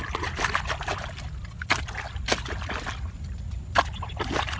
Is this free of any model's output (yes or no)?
yes